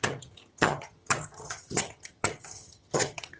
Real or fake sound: fake